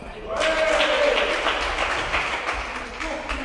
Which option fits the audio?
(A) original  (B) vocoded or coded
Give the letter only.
A